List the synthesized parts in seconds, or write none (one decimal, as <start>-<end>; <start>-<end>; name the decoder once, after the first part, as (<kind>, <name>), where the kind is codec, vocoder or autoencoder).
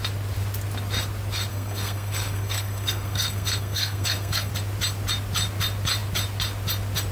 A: 1.5-4.5 (codec, SNAC)